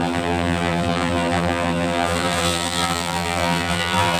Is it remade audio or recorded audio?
remade